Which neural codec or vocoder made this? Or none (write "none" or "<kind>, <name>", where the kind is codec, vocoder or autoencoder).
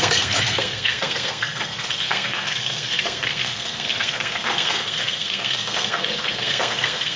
codec, SNAC